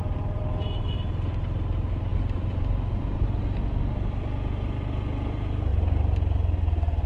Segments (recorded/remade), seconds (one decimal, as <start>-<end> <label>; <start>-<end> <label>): 0.0-7.1 recorded